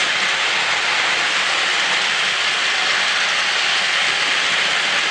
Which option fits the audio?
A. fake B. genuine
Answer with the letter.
B